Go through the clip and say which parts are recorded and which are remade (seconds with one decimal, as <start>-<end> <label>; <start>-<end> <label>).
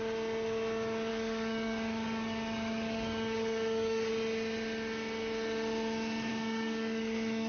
0.0-1.1 recorded; 1.1-4.1 remade; 4.1-6.3 recorded; 6.3-7.5 remade